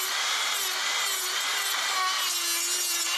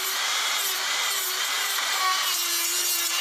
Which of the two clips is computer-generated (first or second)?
second